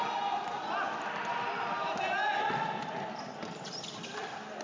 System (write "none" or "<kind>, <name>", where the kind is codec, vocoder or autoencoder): none